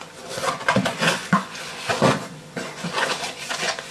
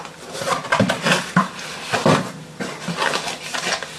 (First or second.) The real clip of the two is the second